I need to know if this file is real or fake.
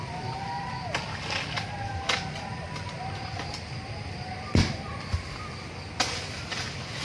real